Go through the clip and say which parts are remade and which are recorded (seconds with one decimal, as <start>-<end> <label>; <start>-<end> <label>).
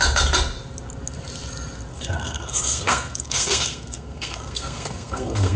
0.0-1.9 recorded; 1.9-5.6 remade